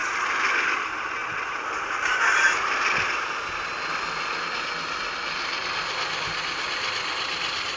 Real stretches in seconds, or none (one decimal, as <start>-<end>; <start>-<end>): 0.0-7.8